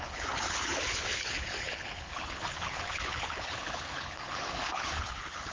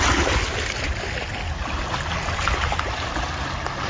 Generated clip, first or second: first